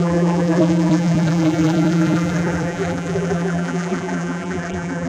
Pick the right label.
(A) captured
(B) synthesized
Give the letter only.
B